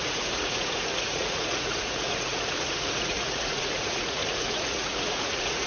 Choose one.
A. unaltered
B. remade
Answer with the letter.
B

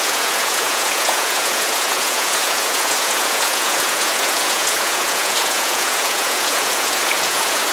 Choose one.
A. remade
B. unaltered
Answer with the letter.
A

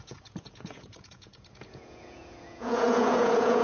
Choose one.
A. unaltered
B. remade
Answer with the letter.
B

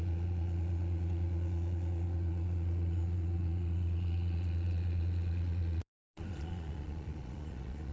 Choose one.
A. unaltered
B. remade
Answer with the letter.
B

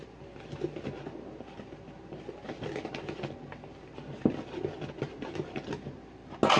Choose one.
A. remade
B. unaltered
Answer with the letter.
B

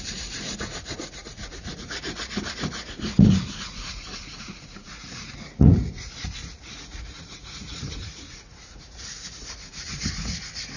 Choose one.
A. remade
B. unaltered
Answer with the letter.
A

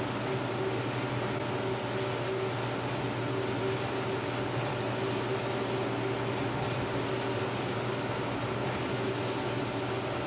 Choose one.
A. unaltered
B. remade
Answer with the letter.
A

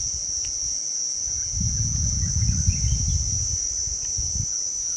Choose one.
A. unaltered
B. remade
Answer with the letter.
A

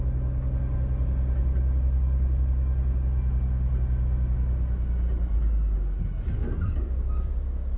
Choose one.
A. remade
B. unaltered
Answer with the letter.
B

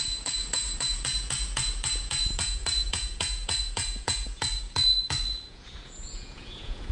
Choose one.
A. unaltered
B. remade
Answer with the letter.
B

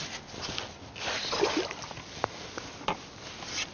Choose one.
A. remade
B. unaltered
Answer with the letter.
B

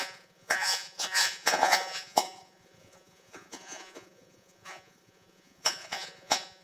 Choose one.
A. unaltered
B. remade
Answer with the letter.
B